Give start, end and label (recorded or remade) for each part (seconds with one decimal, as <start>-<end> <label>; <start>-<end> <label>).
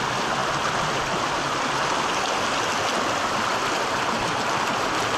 0.0-3.5 recorded; 3.5-4.8 remade; 4.8-5.2 recorded